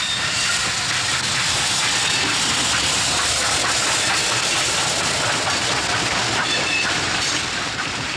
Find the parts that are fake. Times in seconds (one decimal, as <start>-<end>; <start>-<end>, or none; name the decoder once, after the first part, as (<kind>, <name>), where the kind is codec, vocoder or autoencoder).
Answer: 6.4-8.2 (vocoder, BigVGAN v2)

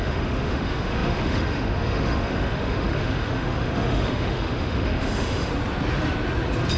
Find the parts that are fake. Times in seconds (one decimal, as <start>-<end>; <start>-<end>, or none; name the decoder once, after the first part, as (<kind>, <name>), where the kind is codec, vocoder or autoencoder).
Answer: 0.0-5.5 (autoencoder, DAC-VAE)